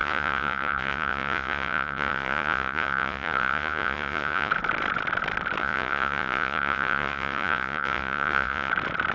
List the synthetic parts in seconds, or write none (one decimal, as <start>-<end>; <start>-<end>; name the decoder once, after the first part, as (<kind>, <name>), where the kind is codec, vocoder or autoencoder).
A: 0.0-4.5 (vocoder, Vocos); 5.6-8.7

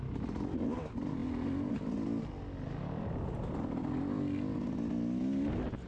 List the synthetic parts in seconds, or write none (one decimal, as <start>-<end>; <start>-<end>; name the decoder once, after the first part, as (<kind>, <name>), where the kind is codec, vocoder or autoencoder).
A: none

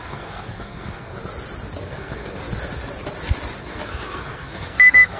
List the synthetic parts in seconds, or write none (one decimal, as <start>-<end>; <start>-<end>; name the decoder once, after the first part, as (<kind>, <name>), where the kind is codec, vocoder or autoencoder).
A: 0.0-1.2 (codec, SNAC); 1.9-2.4; 3.6-5.2

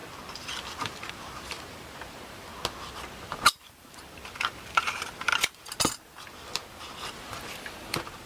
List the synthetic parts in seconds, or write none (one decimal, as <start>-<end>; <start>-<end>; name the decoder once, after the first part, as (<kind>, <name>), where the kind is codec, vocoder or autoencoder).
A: 1.1-2.5 (vocoder, BigVGAN v2); 3.3-5.3; 7.0-8.3

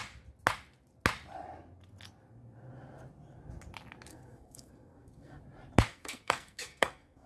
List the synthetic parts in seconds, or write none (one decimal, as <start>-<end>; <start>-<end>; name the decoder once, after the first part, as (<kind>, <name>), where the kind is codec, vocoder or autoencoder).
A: 4.1-5.4 (codec, SNAC); 5.9-7.3

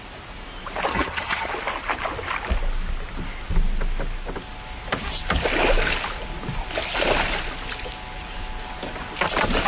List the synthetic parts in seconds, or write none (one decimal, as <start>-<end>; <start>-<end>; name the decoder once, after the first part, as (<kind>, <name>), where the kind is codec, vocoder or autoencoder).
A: 0.9-1.5 (vocoder, HiFi-GAN)

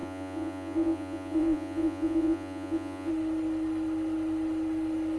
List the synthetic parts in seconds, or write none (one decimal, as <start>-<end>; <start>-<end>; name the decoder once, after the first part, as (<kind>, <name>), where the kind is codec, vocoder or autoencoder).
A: 0.0-3.1 (vocoder, Vocos)